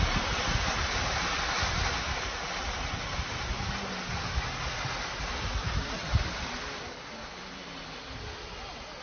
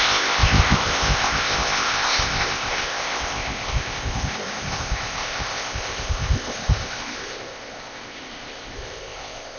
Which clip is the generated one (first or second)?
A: second